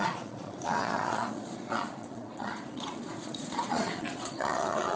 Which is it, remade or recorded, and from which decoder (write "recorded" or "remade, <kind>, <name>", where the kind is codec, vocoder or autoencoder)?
remade, vocoder, Vocos